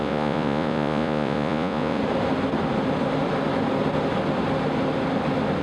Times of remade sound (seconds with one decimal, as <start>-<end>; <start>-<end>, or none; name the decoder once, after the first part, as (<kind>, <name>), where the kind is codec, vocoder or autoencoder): 0.0-2.0 (vocoder, Vocos)